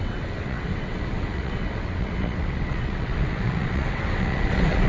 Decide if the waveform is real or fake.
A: fake